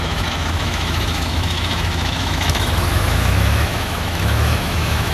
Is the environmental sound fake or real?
fake